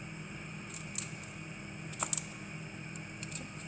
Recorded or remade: recorded